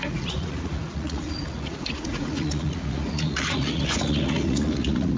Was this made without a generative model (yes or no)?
no